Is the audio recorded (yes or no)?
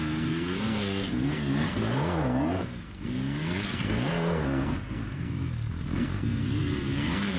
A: no